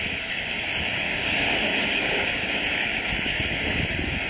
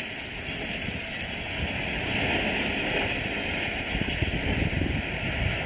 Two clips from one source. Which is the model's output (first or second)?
first